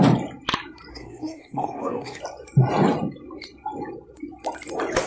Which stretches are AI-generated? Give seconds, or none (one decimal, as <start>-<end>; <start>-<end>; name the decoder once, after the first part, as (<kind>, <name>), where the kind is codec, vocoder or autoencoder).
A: 0.9-2.2 (codec, SNAC)